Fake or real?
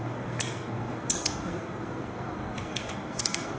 fake